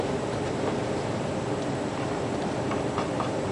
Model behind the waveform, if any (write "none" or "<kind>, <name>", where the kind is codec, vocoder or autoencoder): vocoder, BigVGAN v2